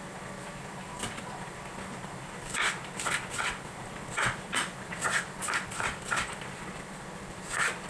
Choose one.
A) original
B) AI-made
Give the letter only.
B